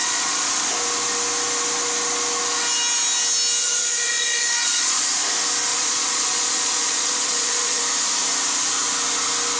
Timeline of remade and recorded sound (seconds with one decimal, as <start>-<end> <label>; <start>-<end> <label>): 0.0-0.7 remade; 0.7-3.6 recorded; 3.6-5.0 remade; 5.0-5.7 recorded; 5.7-7.8 remade; 7.8-9.6 recorded